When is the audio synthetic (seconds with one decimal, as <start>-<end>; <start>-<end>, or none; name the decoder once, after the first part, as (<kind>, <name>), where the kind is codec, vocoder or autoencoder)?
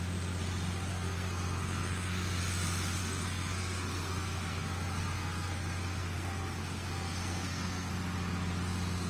0.9-2.4 (codec, SNAC); 3.0-7.9